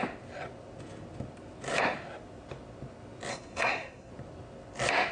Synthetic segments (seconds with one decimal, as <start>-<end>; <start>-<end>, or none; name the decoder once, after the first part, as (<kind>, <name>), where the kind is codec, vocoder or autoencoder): 3.3-4.1 (codec, SNAC)